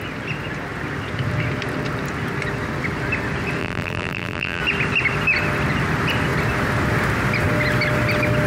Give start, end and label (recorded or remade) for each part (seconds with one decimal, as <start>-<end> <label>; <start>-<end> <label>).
0.0-3.6 recorded; 3.6-4.6 remade; 4.6-8.5 recorded